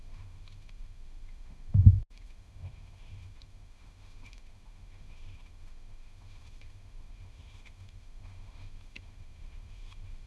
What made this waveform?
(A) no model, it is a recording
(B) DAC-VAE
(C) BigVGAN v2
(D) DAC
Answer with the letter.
B